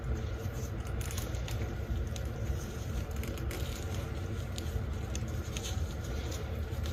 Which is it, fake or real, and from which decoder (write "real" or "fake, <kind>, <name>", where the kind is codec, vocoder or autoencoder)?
fake, vocoder, BigVGAN v2